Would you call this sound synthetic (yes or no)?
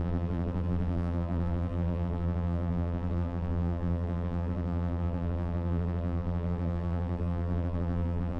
yes